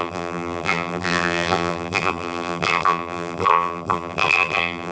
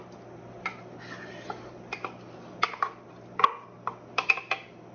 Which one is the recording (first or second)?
second